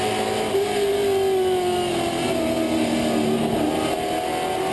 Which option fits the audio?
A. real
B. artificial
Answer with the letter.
A